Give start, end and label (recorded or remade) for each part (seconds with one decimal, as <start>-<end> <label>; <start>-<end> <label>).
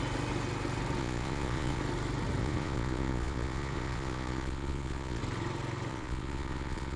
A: 0.0-1.0 recorded; 1.0-1.8 remade; 1.8-2.4 recorded; 2.4-5.2 remade; 5.2-5.9 recorded; 5.9-7.0 remade